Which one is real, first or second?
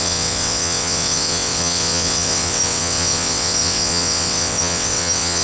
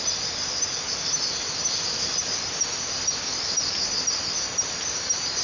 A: second